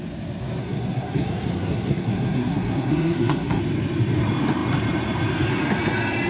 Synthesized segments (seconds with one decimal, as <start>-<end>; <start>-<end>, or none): 0.6-3.6